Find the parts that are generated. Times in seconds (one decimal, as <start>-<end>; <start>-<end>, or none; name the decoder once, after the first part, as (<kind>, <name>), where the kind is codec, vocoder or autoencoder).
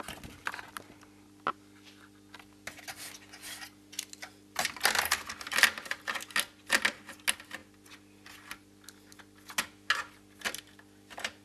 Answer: none